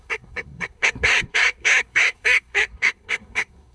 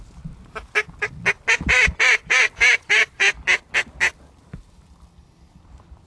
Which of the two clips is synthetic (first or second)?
first